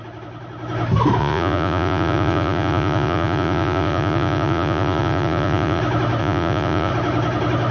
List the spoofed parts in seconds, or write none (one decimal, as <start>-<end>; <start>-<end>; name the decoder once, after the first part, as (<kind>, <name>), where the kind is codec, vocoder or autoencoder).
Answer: 1.2-5.8 (vocoder, Vocos); 6.2-6.9